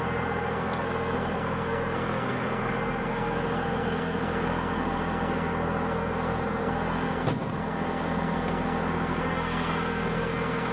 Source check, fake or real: fake